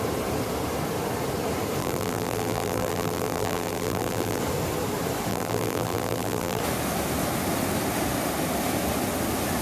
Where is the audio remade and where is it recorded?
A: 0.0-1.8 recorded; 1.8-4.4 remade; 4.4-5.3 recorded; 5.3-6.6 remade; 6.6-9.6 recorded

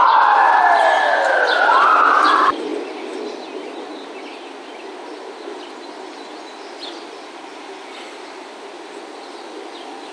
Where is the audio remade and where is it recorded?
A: 0.0-10.1 recorded

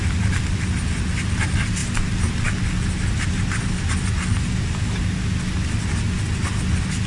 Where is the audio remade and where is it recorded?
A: 0.0-7.1 recorded

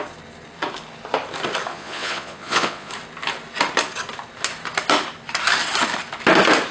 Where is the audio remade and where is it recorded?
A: 0.0-1.7 recorded; 1.7-2.9 remade; 2.9-6.7 recorded

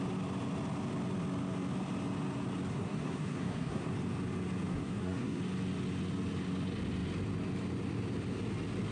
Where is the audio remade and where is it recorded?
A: 0.0-2.7 recorded; 2.7-3.9 remade; 3.9-4.7 recorded; 4.7-5.4 remade; 5.4-8.9 recorded

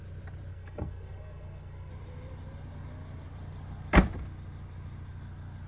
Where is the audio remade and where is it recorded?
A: 0.0-0.5 recorded; 0.5-1.9 remade; 1.9-5.7 recorded

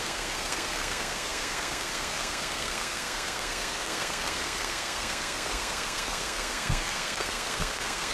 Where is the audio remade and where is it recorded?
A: 0.0-8.1 remade

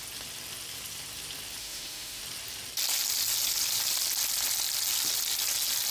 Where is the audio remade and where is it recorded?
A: 0.0-1.6 recorded; 1.6-2.2 remade; 2.2-5.9 recorded